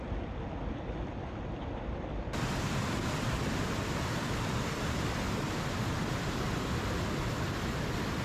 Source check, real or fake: real